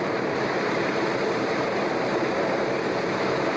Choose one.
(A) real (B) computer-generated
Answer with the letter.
B